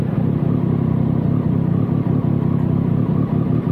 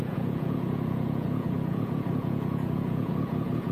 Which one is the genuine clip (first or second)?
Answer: first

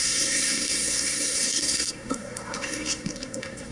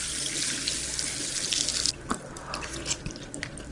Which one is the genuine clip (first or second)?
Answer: second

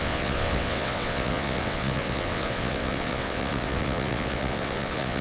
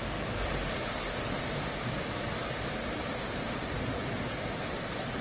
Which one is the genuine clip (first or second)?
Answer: second